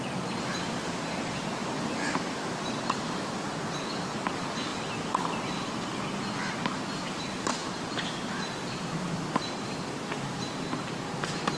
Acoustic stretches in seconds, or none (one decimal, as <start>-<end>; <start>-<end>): 0.0-11.6